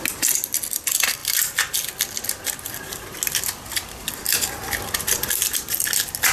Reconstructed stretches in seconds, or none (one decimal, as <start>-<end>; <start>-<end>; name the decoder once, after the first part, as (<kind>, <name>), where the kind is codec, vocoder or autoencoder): none